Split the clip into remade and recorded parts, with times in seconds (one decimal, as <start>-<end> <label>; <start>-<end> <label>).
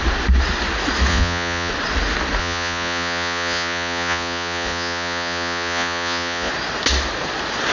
0.0-1.1 recorded; 1.1-1.7 remade; 1.7-2.4 recorded; 2.4-6.5 remade; 6.5-7.7 recorded